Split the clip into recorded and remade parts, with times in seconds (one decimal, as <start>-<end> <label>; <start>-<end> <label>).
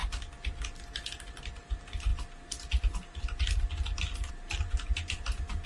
0.0-1.4 recorded; 1.4-2.1 remade; 2.1-4.3 recorded; 4.3-5.7 remade